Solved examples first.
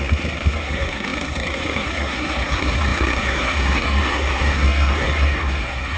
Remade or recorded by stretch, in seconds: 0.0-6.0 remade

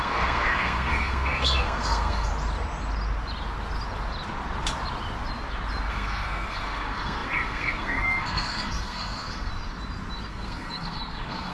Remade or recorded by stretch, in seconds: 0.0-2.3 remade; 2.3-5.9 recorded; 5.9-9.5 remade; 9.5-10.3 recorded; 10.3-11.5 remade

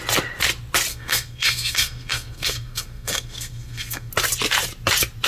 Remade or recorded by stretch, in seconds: 0.0-0.9 recorded; 0.9-4.1 remade; 4.1-5.3 recorded

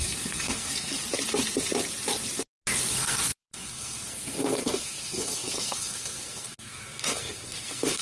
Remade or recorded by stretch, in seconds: 0.0-1.0 remade; 1.0-2.9 recorded; 2.9-8.0 remade

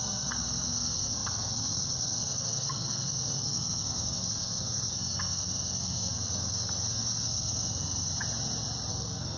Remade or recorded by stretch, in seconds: 0.0-8.1 remade; 8.1-8.9 recorded; 8.9-9.4 remade

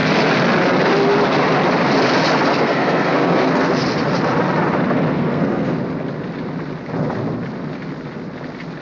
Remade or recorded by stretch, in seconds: 0.0-2.5 recorded; 2.5-3.7 remade; 3.7-5.1 recorded; 5.1-5.7 remade; 5.7-8.8 recorded